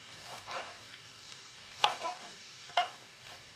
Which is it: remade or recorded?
remade